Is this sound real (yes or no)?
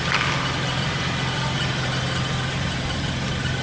yes